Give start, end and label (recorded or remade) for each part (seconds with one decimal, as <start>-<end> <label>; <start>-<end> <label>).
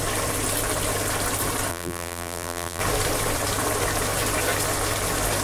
0.0-1.7 recorded; 1.7-2.8 remade; 2.8-5.4 recorded